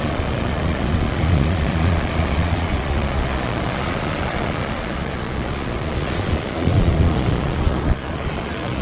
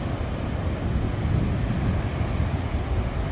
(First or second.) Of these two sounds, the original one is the second